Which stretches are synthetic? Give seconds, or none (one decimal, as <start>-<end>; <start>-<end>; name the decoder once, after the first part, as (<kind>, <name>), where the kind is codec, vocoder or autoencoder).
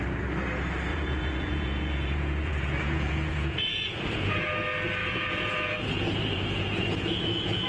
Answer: 0.9-4.5 (vocoder, Vocos); 5.0-7.7